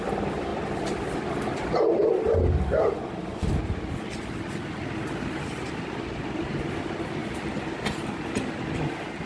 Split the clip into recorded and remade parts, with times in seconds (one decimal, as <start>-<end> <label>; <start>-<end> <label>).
0.0-9.3 recorded